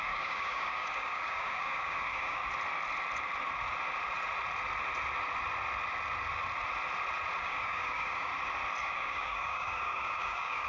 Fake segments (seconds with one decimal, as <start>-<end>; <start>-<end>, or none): 0.0-2.4; 7.4-8.3; 8.8-10.7